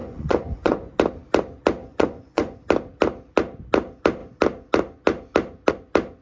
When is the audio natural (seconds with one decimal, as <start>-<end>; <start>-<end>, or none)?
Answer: 1.0-1.8; 2.5-6.2